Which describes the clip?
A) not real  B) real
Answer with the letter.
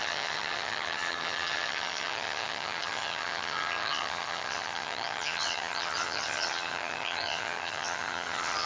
A